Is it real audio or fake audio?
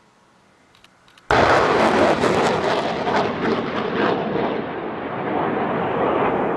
real